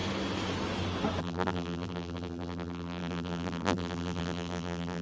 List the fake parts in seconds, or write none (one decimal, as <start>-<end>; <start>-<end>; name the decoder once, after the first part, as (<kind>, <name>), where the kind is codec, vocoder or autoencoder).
1.2-5.0 (vocoder, BigVGAN v2)